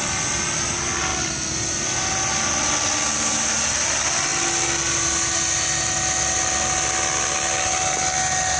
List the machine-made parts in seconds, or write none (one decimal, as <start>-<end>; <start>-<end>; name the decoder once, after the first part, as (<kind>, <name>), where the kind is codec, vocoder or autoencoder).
none